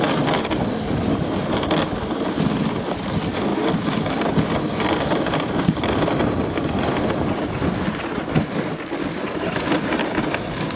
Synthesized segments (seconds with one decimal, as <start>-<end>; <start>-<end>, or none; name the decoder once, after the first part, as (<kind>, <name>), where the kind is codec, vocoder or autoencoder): none